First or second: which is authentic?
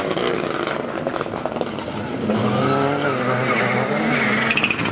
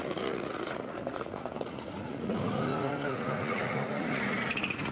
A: first